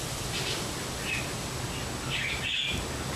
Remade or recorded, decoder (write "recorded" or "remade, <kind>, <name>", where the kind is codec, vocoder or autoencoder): recorded